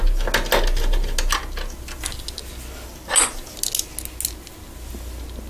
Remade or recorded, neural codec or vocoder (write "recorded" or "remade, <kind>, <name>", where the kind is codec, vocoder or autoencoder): recorded